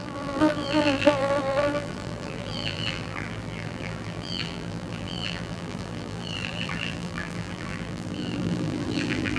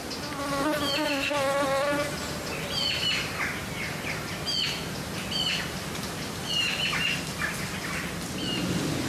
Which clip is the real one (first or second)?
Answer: second